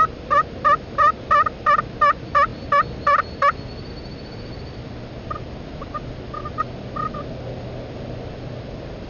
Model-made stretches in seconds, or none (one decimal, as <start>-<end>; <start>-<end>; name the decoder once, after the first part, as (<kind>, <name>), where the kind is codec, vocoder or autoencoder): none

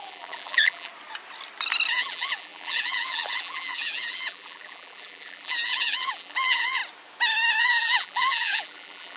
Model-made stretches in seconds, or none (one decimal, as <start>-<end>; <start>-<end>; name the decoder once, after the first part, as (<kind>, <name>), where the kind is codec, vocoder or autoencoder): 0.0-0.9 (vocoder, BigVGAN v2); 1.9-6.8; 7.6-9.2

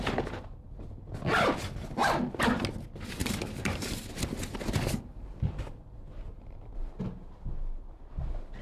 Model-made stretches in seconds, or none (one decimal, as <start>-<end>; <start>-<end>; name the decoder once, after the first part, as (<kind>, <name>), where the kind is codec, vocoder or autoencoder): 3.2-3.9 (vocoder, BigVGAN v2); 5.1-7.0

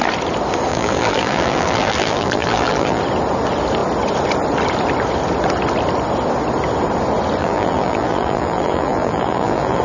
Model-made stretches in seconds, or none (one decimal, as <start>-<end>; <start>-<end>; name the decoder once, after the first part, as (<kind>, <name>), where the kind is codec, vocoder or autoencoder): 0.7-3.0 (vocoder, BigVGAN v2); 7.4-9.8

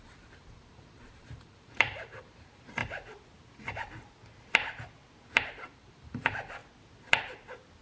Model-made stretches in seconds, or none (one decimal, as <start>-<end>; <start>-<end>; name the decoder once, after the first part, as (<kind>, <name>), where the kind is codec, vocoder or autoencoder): 0.0-2.8 (vocoder, BigVGAN v2); 5.3-6.6